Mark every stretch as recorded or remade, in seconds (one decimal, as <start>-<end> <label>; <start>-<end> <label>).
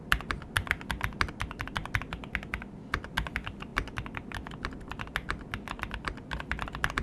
0.0-7.0 recorded